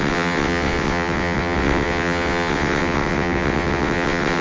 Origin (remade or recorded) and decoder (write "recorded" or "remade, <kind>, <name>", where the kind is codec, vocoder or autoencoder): remade, vocoder, WaveNeXt